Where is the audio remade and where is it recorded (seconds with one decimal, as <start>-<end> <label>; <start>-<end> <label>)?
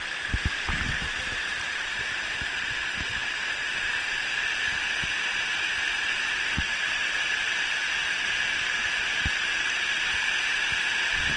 0.0-11.4 recorded